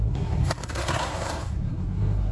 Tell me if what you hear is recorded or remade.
remade